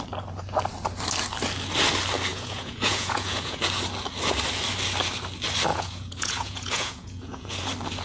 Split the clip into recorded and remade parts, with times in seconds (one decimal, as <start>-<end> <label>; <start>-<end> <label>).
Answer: 0.0-2.3 recorded; 2.3-3.6 remade; 3.6-5.7 recorded; 5.7-7.6 remade; 7.6-8.0 recorded